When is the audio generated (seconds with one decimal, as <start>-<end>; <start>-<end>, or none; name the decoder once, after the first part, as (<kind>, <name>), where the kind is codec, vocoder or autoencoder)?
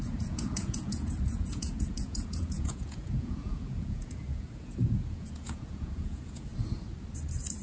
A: 0.0-6.5 (vocoder, Vocos)